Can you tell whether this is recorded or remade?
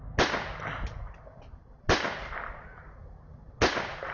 recorded